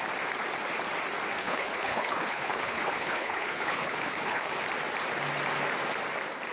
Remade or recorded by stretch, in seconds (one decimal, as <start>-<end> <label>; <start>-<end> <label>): 0.0-1.4 recorded; 1.4-4.5 remade; 4.5-6.5 recorded